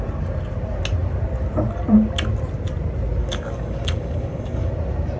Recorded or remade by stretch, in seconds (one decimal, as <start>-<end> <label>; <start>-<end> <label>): 0.0-3.2 recorded; 3.2-4.7 remade; 4.7-5.2 recorded